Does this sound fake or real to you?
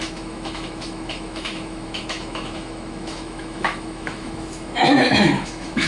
fake